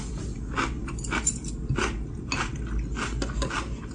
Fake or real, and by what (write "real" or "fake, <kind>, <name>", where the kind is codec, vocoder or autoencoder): real